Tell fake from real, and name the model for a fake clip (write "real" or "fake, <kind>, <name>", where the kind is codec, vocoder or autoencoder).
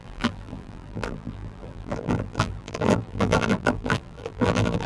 fake, vocoder, BigVGAN v2